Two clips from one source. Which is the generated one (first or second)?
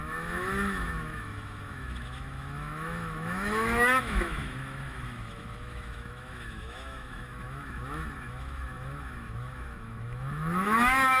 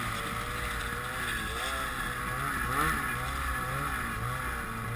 first